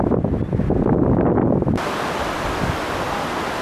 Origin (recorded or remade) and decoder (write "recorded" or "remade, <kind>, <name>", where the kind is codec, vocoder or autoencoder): recorded